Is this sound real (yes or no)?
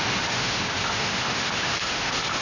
no